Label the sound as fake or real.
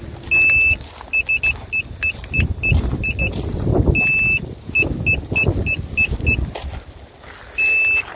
real